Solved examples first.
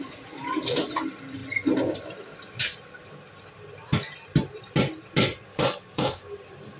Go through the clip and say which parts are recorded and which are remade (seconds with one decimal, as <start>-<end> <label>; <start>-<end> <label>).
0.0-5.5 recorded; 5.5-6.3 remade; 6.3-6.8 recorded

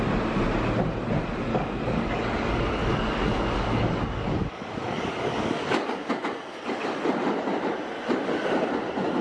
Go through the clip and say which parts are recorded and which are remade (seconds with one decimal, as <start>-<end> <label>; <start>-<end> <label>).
0.0-1.5 recorded; 1.5-6.1 remade; 6.1-9.2 recorded

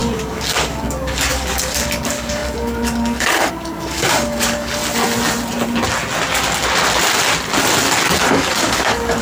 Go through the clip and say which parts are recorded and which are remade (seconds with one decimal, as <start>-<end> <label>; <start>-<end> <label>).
0.0-4.8 remade; 4.8-8.2 recorded; 8.2-9.2 remade

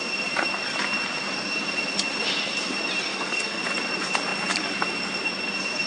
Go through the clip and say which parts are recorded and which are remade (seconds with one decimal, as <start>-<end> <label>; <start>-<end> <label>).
0.0-3.1 recorded; 3.1-3.6 remade; 3.6-5.9 recorded

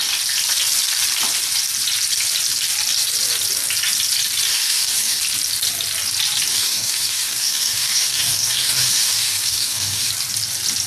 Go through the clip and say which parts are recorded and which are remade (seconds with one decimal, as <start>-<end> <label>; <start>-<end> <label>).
0.0-4.5 recorded; 4.5-5.2 remade; 5.2-6.5 recorded; 6.5-10.1 remade; 10.1-10.9 recorded

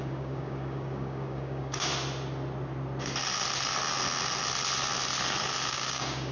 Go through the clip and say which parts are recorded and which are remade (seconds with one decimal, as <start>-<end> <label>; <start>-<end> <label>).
0.0-1.9 remade; 1.9-5.7 recorded; 5.7-6.3 remade